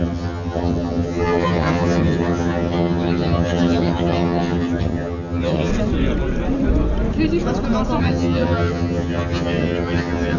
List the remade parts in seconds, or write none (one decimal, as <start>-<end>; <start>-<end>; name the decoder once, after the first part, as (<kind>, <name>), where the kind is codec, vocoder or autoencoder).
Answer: 0.0-5.7 (vocoder, HiFi-GAN); 8.0-10.4